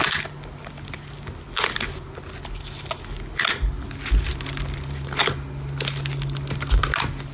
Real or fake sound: real